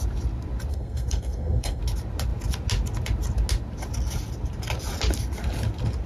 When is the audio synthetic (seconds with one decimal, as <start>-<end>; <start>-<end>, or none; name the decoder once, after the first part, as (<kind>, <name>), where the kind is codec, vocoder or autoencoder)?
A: 0.7-1.8 (codec, SNAC)